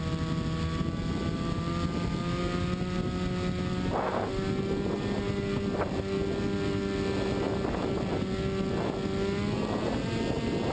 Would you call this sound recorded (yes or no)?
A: yes